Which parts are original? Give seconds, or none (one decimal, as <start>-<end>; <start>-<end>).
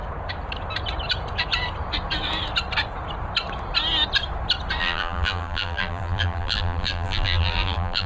0.0-4.8